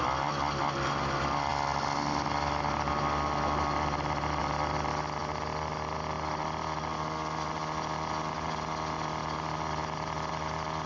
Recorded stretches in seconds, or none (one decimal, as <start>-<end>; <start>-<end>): 0.0-10.9